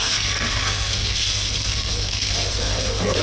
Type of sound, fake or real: fake